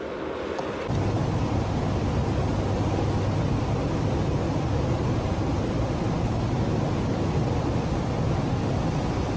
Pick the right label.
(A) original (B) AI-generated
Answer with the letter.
A